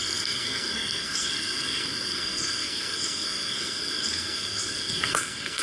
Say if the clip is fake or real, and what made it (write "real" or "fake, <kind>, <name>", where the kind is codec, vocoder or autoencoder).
fake, codec, SNAC